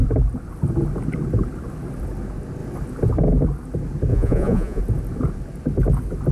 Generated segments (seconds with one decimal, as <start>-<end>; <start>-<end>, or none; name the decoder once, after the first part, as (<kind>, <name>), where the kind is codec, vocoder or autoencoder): 4.1-4.8 (vocoder, Vocos)